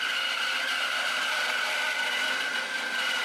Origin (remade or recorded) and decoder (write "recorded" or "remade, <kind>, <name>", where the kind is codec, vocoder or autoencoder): recorded